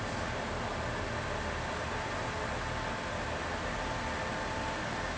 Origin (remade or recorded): recorded